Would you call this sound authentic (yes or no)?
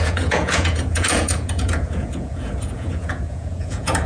no